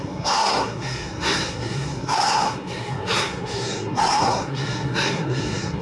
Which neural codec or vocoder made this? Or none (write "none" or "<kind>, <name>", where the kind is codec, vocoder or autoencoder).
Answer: codec, SNAC